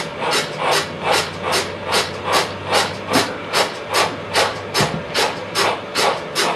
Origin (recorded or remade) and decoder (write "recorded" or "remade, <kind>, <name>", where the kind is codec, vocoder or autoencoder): remade, vocoder, BigVGAN v2